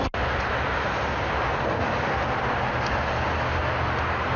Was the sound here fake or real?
real